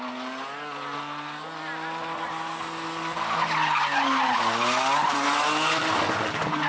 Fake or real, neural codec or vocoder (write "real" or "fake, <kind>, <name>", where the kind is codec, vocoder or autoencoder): real